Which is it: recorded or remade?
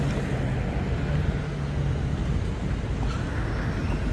recorded